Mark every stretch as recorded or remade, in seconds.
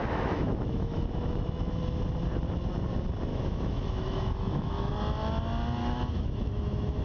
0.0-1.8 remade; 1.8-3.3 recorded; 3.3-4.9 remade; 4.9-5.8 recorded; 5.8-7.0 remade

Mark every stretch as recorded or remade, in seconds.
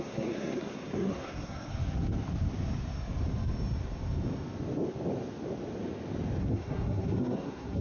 0.0-1.7 remade; 1.7-6.4 recorded; 6.4-7.8 remade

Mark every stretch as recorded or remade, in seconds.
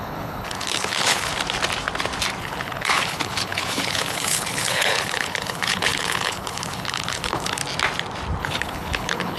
0.0-1.3 remade; 1.3-2.4 recorded; 2.4-7.6 remade; 7.6-8.4 recorded; 8.4-9.4 remade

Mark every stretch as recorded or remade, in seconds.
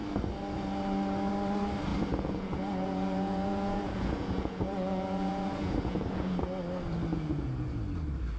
0.0-1.9 recorded; 1.9-6.4 remade; 6.4-7.1 recorded; 7.1-7.8 remade; 7.8-8.4 recorded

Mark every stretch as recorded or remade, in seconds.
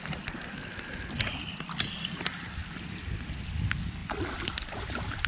0.0-5.3 recorded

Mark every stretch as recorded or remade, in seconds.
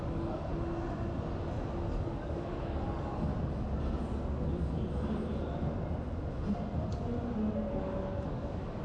0.0-0.5 remade; 0.5-1.9 recorded; 1.9-3.3 remade; 3.3-7.7 recorded; 7.7-8.8 remade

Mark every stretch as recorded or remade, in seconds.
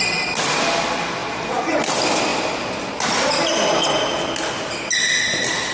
0.0-1.2 recorded; 1.2-1.9 remade; 1.9-5.7 recorded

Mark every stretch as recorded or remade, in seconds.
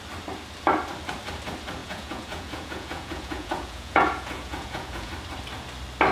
0.0-1.8 recorded; 1.8-5.1 remade; 5.1-6.1 recorded